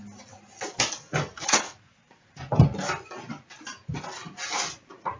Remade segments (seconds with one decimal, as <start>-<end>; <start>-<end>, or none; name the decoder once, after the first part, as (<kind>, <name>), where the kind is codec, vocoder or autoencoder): 1.4-2.5 (vocoder, Vocos)